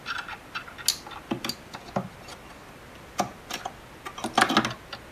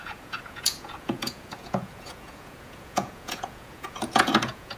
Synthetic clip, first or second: second